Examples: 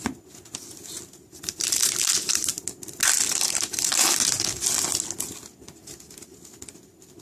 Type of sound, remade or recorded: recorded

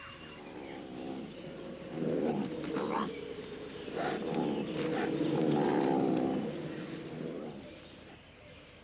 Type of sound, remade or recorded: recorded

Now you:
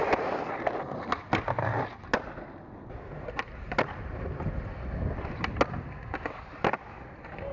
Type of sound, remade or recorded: recorded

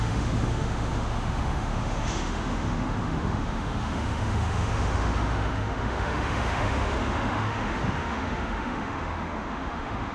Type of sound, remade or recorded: remade